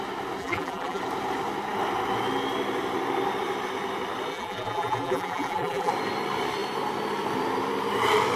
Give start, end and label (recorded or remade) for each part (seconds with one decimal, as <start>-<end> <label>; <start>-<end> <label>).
0.0-0.4 recorded; 0.4-1.0 remade; 1.0-4.3 recorded; 4.3-5.9 remade; 5.9-8.4 recorded